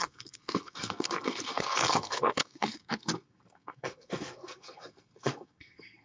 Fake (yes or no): yes